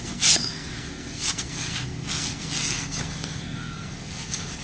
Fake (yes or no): yes